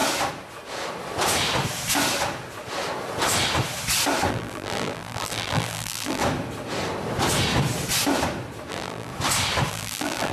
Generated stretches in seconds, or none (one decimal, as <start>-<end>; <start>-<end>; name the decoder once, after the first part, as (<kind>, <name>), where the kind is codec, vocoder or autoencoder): 4.3-6.2 (vocoder, BigVGAN v2); 8.7-9.1; 9.7-10.3